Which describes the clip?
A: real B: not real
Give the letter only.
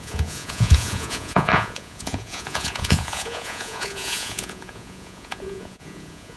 B